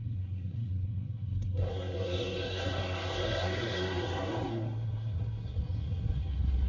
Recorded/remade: remade